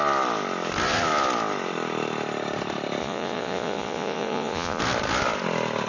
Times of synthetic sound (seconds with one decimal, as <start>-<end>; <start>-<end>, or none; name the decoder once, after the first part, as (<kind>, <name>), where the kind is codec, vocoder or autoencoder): 3.0-4.8 (vocoder, Vocos)